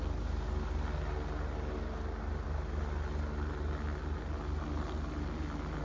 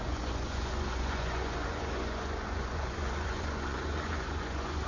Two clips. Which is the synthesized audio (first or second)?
second